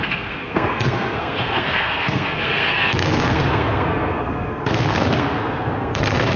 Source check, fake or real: fake